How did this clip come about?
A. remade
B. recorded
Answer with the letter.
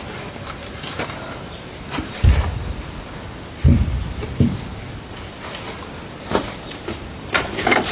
A